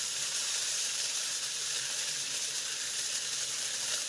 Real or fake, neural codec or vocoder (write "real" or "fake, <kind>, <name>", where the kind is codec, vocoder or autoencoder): fake, vocoder, BigVGAN v2